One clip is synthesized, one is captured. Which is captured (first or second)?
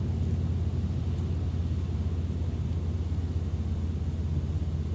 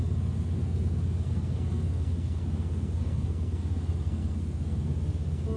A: first